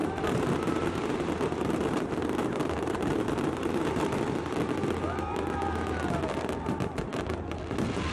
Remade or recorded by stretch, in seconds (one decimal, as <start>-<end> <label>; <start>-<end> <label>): 0.0-4.2 remade; 4.2-8.1 recorded